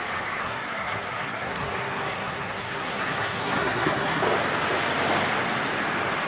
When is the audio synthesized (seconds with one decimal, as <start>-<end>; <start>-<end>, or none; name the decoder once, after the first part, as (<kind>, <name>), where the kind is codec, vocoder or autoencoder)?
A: 0.4-4.2 (codec, SNAC)